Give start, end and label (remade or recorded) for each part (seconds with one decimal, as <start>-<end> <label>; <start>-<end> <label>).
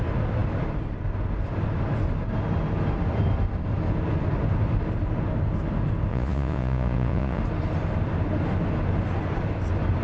0.0-6.1 recorded; 6.1-7.4 remade; 7.4-10.0 recorded